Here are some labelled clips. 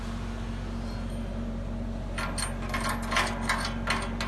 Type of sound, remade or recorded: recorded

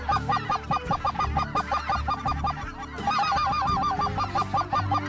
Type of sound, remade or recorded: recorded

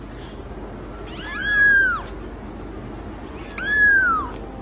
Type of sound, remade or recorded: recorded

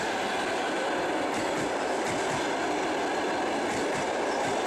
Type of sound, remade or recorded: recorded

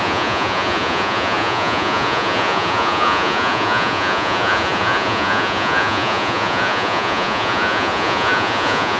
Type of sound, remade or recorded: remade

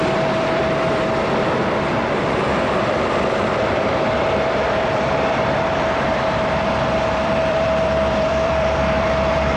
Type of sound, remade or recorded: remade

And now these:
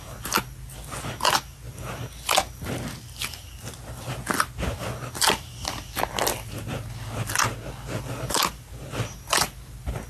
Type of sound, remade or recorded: recorded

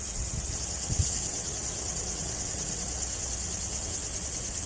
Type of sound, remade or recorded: remade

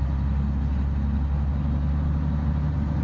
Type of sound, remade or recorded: recorded